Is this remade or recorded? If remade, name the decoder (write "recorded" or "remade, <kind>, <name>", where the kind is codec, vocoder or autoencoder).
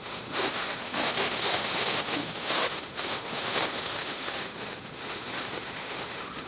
remade, autoencoder, DAC-VAE